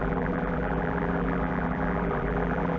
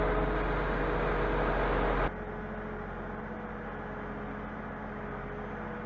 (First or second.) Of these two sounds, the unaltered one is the second